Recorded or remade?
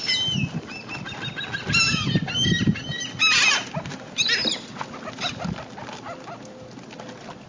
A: recorded